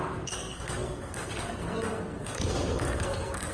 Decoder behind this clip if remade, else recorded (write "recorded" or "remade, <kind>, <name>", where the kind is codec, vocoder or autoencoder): remade, codec, SNAC